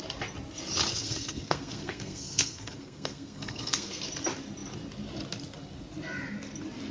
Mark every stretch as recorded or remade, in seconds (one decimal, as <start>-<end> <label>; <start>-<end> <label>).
0.0-0.9 recorded; 0.9-4.0 remade; 4.0-6.9 recorded